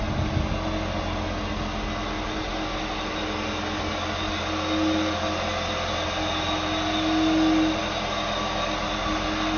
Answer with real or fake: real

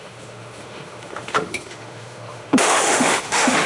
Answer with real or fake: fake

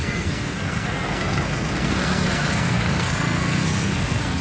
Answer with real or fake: fake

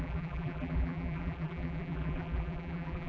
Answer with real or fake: fake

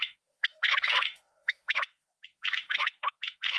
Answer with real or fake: fake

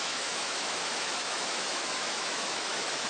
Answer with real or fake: fake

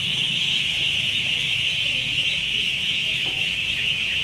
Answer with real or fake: fake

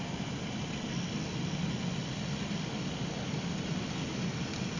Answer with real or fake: real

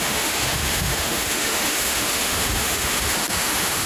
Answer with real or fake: fake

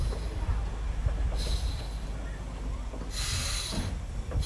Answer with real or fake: real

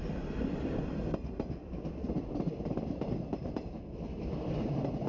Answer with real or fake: real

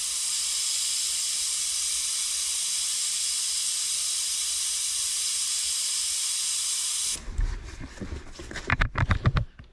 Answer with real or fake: real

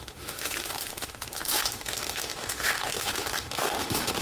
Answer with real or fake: fake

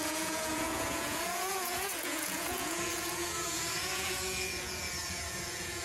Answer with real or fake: fake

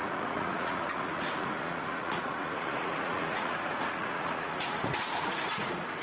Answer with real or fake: fake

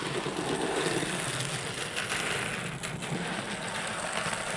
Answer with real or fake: real